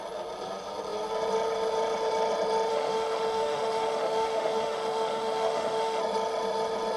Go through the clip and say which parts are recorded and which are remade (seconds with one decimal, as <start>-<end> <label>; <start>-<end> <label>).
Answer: 0.0-2.7 recorded; 2.7-6.0 remade; 6.0-7.0 recorded

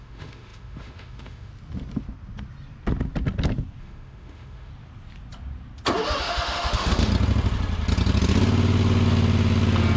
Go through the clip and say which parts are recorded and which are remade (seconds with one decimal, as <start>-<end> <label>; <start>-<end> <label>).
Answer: 0.0-1.5 remade; 1.5-3.8 recorded; 3.8-4.7 remade; 4.7-6.2 recorded; 6.2-7.1 remade; 7.1-10.0 recorded

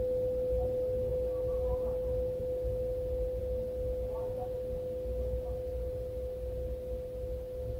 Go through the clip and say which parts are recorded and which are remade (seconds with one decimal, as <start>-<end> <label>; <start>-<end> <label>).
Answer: 0.0-7.8 recorded

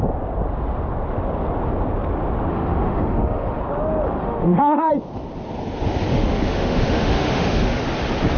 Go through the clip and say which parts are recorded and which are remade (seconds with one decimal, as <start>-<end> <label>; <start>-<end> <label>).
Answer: 0.0-2.5 recorded; 2.5-3.6 remade; 3.6-4.2 recorded; 4.2-4.9 remade; 4.9-6.1 recorded; 6.1-7.8 remade; 7.8-8.4 recorded

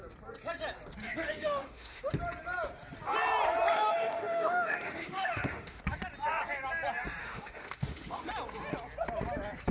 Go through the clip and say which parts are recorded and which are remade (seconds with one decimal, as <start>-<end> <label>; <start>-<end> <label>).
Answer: 0.0-1.0 recorded; 1.0-2.1 remade; 2.1-3.7 recorded; 3.7-5.8 remade; 5.8-7.2 recorded; 7.2-8.3 remade; 8.3-9.7 recorded